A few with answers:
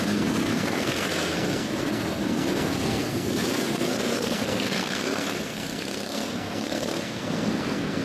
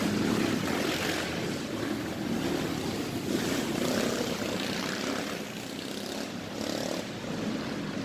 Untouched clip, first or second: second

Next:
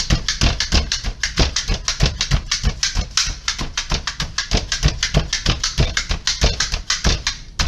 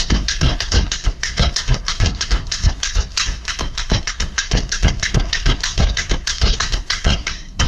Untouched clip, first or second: first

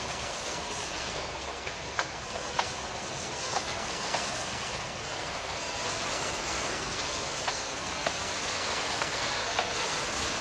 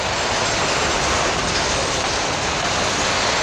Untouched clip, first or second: second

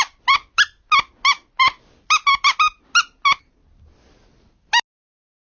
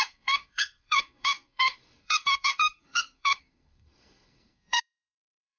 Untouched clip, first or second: first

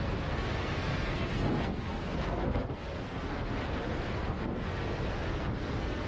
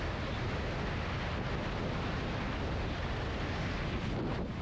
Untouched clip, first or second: second